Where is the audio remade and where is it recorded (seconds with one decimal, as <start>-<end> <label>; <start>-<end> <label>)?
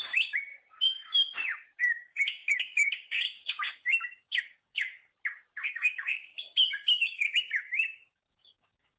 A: 0.0-0.5 remade; 0.5-1.8 recorded; 1.8-5.1 remade; 5.1-5.7 recorded; 5.7-9.0 remade